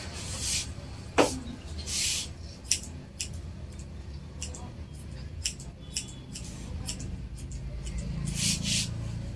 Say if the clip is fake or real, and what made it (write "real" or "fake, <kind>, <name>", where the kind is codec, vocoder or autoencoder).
real